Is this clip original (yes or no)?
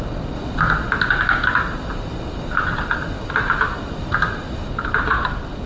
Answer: yes